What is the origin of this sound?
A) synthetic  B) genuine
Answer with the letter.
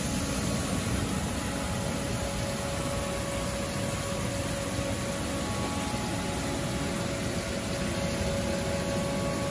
B